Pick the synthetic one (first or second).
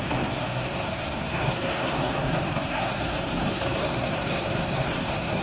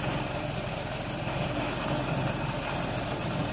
first